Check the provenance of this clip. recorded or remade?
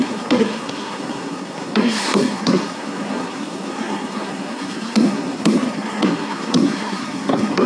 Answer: remade